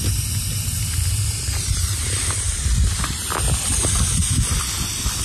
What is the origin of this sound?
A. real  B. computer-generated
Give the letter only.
A